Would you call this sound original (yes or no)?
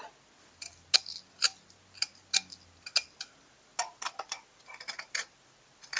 yes